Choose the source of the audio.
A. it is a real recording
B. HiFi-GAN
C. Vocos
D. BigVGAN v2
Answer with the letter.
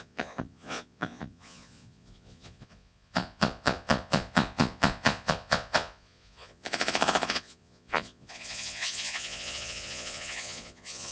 C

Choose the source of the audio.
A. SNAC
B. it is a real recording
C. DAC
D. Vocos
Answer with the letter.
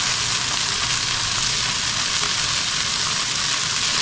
B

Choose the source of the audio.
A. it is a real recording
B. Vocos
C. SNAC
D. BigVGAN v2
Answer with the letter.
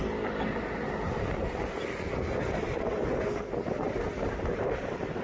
A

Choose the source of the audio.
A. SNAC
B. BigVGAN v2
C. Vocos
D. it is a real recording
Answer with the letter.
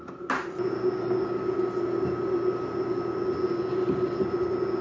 D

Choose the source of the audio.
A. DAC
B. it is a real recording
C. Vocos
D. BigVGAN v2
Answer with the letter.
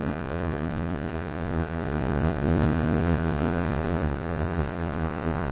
C